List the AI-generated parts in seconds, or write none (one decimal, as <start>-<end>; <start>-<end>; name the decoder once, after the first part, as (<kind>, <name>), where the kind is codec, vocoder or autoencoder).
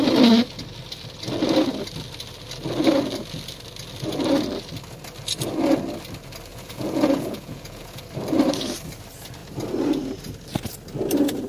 6.5-8.0 (vocoder, Vocos)